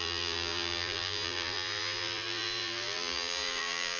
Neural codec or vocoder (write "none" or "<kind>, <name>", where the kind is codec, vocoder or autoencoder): vocoder, BigVGAN v2